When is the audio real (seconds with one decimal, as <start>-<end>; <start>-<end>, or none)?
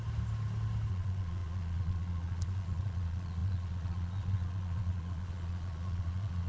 0.0-0.9